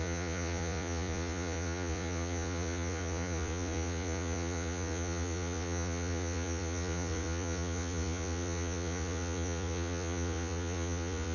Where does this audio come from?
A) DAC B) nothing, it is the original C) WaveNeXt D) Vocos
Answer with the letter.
D